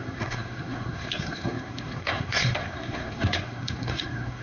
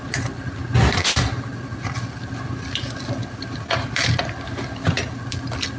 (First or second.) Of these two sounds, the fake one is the first